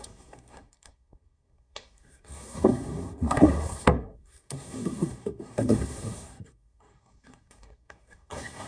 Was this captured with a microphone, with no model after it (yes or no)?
no